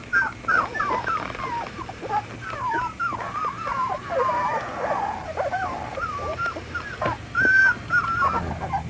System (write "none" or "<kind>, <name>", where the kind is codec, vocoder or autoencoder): none